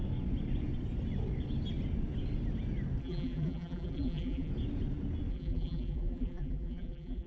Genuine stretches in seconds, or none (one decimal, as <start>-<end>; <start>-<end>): 0.0-3.0; 4.5-5.3